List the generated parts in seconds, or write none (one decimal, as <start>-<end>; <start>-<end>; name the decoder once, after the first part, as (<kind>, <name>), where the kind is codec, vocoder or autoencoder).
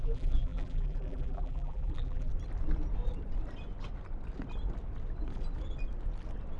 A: 0.0-2.3 (vocoder, BigVGAN v2)